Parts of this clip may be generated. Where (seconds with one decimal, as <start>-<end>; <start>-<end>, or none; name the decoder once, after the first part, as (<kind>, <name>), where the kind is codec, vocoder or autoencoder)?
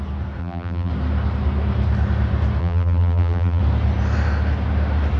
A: 0.4-0.9 (vocoder, BigVGAN v2); 2.6-3.6